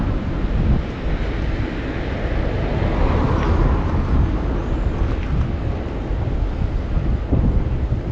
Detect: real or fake real